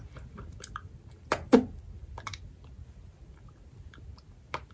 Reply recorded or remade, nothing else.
recorded